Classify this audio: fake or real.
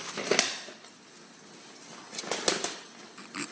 real